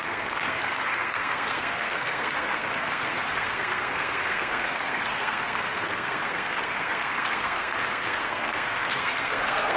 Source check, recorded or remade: remade